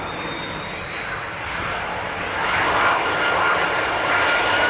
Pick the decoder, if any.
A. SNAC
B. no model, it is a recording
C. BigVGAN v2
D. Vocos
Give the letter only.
B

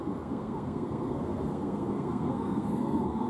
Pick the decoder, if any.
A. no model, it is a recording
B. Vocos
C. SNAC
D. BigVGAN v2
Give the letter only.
C